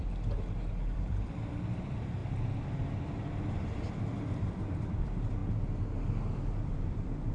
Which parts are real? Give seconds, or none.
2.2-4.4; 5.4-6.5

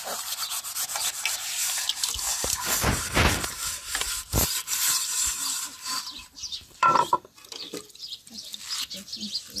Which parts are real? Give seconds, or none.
0.0-6.1; 7.9-9.6

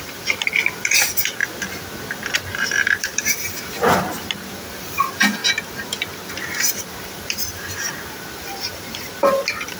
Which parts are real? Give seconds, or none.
1.4-2.3; 5.4-6.3

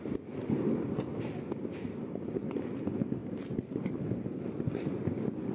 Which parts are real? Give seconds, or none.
0.0-2.0; 2.7-3.2; 4.0-5.5

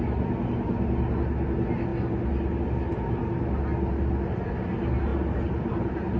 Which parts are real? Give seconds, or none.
0.0-5.1

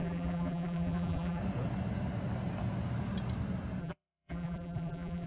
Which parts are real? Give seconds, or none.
1.4-3.8